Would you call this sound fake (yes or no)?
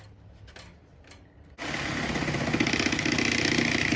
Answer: no